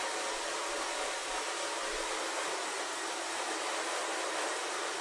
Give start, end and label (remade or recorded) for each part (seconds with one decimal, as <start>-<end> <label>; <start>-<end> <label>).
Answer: 0.0-5.0 recorded